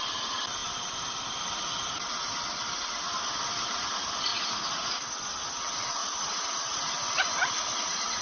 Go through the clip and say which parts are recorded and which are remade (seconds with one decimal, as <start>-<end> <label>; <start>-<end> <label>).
0.0-4.3 recorded; 4.3-5.1 remade; 5.1-6.0 recorded; 6.0-8.2 remade